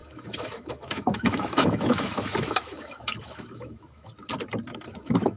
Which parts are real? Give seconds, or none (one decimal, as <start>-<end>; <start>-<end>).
4.1-4.9